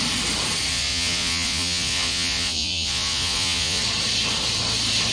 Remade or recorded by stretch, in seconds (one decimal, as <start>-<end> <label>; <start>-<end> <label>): 0.0-0.7 recorded; 0.7-3.8 remade; 3.8-5.1 recorded